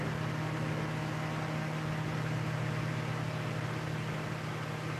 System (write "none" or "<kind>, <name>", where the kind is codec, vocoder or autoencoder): none